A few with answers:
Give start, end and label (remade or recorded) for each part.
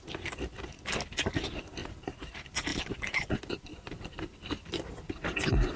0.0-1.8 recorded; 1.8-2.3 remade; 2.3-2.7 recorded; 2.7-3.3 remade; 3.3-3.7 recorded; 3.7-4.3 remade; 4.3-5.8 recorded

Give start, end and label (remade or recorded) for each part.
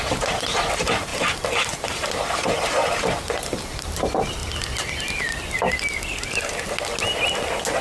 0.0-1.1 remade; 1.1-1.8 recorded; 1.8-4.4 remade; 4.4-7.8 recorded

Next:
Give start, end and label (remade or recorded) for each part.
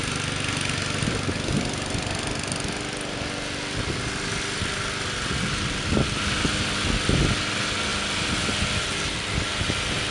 0.0-10.1 recorded